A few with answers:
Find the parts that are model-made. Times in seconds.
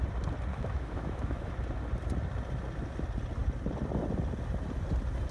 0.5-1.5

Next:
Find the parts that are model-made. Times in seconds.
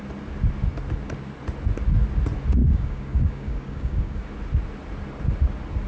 2.6-4.2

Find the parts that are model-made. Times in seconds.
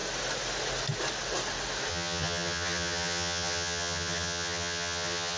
1.9-5.4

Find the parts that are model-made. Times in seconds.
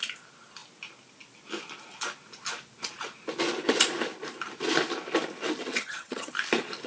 5.7-6.3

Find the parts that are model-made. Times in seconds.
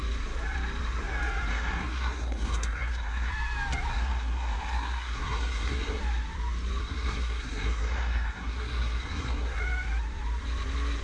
1.5-3.3; 3.9-6.0; 6.8-9.6